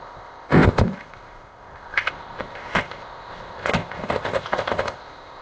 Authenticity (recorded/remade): remade